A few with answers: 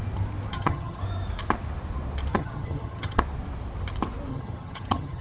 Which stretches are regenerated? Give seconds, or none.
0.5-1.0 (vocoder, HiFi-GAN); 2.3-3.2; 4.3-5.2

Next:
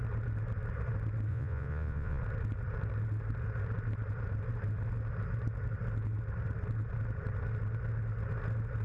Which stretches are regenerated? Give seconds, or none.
1.3-2.2 (vocoder, Vocos)